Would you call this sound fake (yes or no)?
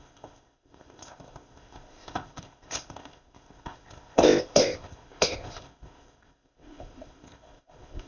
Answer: yes